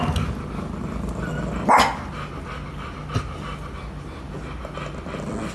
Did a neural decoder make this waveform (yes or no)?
no